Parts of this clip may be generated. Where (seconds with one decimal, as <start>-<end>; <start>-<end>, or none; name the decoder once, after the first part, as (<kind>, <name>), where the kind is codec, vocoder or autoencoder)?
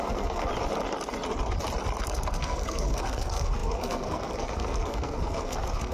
0.0-0.5 (codec, SNAC); 2.1-5.9